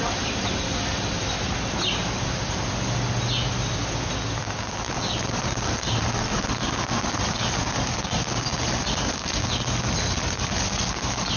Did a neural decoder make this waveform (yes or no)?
no